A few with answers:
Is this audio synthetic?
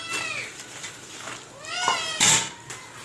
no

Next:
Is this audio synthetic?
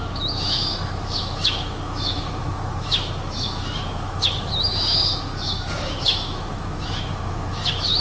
yes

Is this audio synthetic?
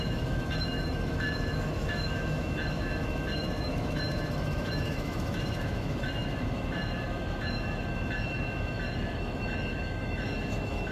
yes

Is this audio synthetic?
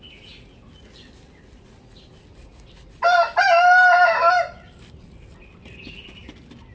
no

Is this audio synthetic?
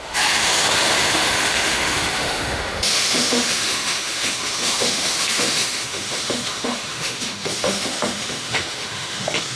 yes